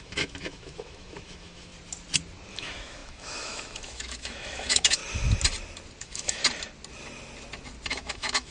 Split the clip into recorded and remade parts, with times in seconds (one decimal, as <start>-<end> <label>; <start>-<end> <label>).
0.0-1.7 remade; 1.7-2.5 recorded; 2.5-5.0 remade; 5.0-6.0 recorded; 6.0-6.4 remade; 6.4-7.9 recorded; 7.9-8.5 remade